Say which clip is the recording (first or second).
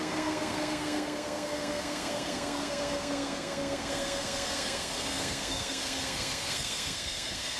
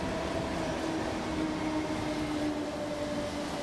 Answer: second